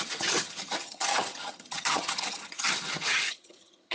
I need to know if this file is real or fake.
fake